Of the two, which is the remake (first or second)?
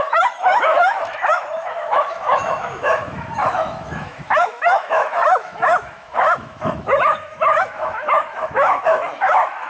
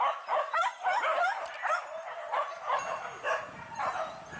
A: first